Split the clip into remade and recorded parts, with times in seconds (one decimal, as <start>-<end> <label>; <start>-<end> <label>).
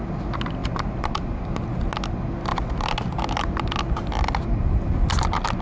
0.0-5.6 recorded